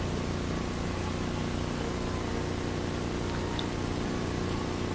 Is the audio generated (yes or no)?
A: no